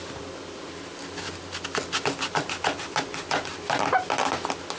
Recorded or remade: recorded